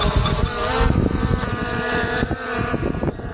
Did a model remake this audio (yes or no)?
yes